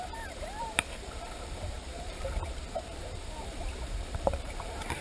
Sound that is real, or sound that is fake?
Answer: fake